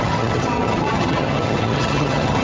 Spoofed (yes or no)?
yes